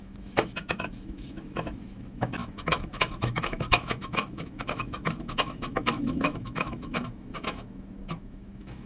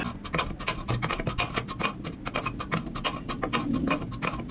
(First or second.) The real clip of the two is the second